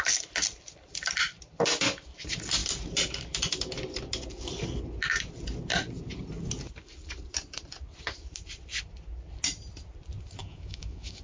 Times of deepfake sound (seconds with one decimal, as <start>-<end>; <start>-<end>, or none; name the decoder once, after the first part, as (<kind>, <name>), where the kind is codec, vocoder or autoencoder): 10.4-11.2 (autoencoder, DAC-VAE)